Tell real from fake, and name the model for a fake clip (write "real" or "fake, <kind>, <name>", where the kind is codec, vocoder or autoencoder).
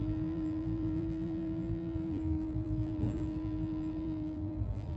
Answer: fake, vocoder, BigVGAN v2